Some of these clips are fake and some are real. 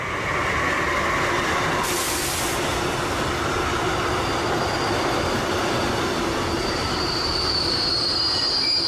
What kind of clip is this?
real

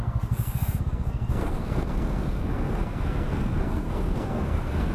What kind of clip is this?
fake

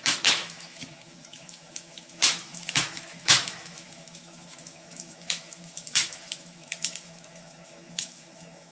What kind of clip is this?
fake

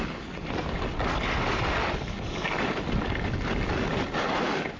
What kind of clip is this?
real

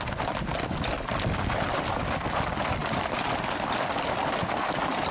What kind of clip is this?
real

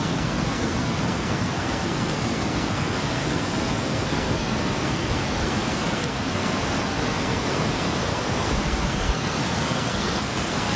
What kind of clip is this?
fake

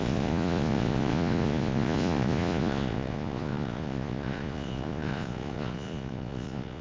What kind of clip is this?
fake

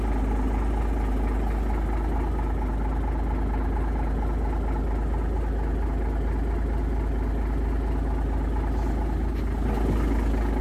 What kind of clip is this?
real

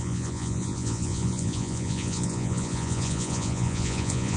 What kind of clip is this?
fake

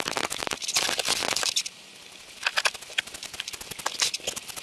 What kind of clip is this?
real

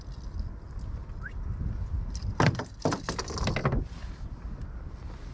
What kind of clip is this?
real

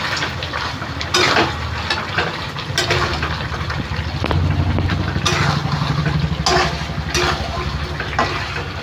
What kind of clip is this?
real